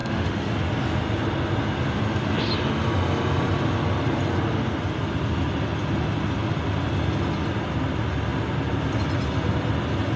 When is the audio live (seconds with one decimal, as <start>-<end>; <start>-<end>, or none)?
0.5-10.2